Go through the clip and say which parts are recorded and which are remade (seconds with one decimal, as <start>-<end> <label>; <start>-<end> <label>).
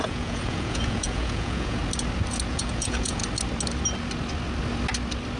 0.0-1.8 remade; 1.8-2.5 recorded; 2.5-3.2 remade; 3.2-5.4 recorded